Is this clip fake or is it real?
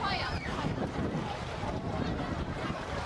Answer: fake